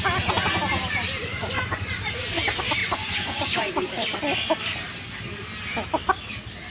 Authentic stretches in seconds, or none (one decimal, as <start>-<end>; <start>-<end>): 0.0-1.2; 1.9-2.8; 3.9-6.7